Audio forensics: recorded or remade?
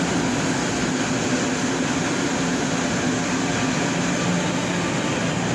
recorded